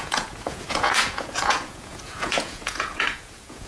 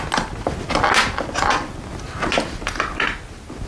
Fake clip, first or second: first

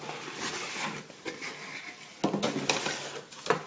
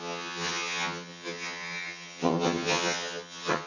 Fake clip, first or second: second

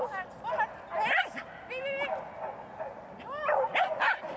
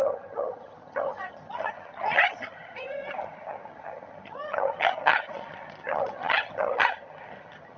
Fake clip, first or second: second